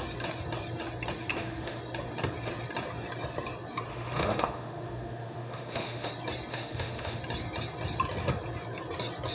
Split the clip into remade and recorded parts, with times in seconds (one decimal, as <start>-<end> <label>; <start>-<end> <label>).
0.0-1.3 recorded; 1.3-1.8 remade; 1.8-3.9 recorded; 3.9-6.1 remade; 6.1-6.5 recorded; 6.5-7.2 remade; 7.2-9.3 recorded